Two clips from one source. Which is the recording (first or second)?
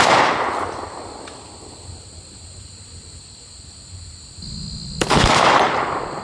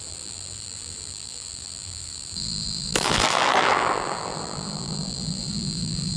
first